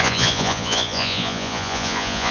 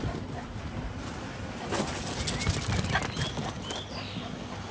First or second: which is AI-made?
first